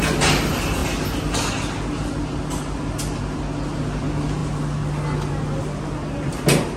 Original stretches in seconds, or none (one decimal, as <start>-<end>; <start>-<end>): 0.0-6.8

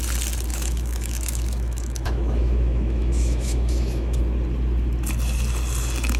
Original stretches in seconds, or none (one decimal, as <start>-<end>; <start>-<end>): 0.0-0.5; 4.2-6.2

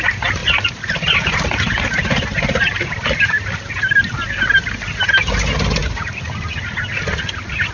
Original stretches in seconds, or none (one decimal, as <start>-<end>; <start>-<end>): 0.0-7.7

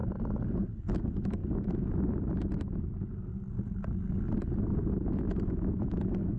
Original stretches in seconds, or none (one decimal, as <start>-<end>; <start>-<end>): 0.0-0.8; 1.4-5.2

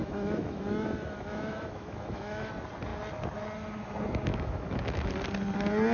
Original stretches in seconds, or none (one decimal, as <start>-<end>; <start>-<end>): 2.5-4.3; 5.1-5.9

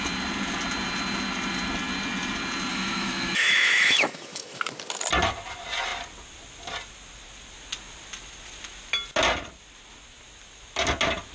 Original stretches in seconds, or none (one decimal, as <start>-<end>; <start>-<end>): 0.0-2.7; 4.6-11.3

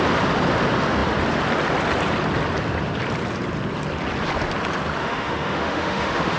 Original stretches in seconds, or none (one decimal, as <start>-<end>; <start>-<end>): 0.0-5.0

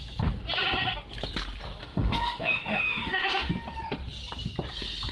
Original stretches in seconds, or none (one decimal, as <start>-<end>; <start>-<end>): 0.0-1.8; 3.5-5.1